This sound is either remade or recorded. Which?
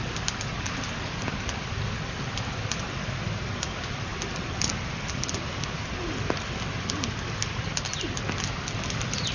recorded